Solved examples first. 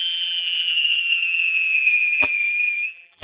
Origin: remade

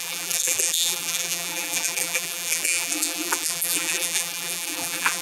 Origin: remade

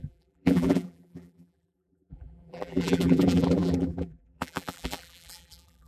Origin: remade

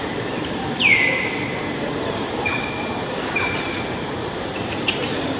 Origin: remade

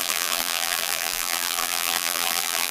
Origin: remade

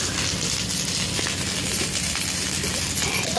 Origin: recorded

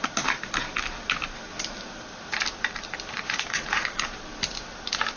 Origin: recorded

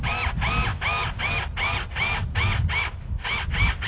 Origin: recorded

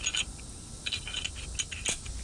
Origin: recorded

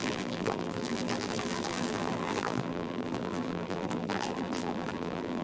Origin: remade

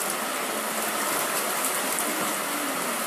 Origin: recorded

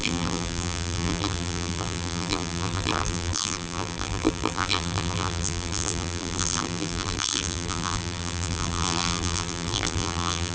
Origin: remade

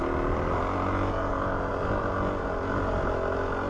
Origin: recorded